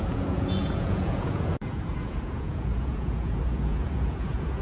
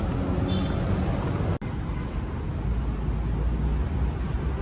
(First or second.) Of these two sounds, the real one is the second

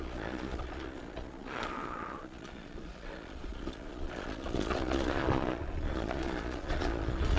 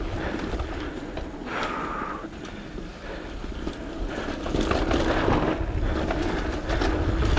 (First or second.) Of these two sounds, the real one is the second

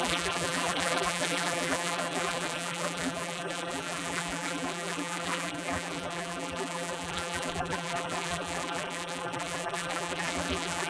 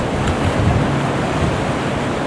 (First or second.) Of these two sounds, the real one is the second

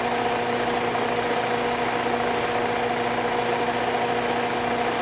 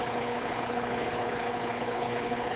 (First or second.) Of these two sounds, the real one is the first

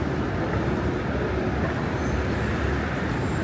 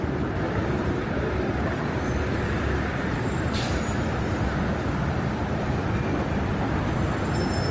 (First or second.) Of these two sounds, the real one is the first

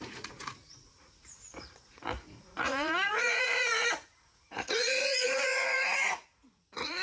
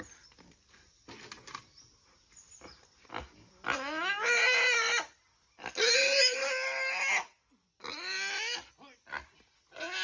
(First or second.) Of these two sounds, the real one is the second